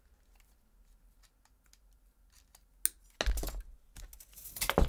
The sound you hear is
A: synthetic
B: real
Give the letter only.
B